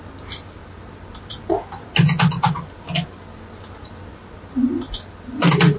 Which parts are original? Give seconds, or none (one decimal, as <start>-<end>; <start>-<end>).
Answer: 0.0-5.8